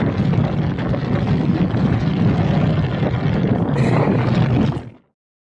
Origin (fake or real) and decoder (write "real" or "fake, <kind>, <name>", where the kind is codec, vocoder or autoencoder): real